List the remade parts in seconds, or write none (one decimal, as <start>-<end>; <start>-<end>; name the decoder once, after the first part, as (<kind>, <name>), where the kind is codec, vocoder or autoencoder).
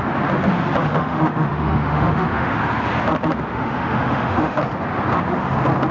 0.9-2.6 (autoencoder, DAC-VAE); 3.5-4.6